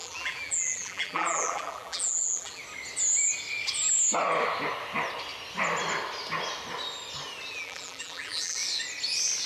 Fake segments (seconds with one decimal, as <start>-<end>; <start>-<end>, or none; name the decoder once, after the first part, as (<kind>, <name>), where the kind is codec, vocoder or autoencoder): 0.0-2.6 (vocoder, BigVGAN v2); 7.5-8.6

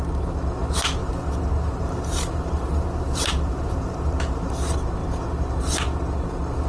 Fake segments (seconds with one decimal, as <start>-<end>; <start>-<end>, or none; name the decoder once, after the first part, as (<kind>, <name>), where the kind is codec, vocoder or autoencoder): 1.0-4.5 (vocoder, BigVGAN v2)